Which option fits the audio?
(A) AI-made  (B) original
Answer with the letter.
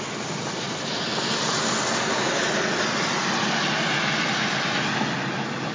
B